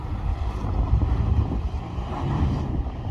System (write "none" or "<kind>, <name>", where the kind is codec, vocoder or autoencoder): vocoder, BigVGAN v2